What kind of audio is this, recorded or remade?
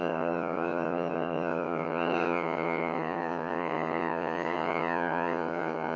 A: remade